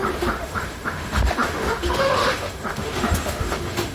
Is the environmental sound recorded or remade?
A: remade